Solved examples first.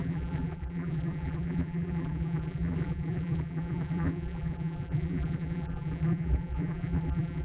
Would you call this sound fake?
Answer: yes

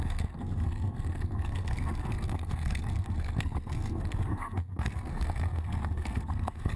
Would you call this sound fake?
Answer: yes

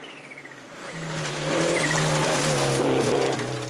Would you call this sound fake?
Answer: no